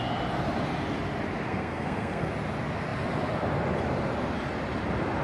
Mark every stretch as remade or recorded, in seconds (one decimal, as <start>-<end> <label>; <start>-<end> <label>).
0.0-1.5 recorded; 1.5-2.3 remade; 2.3-5.2 recorded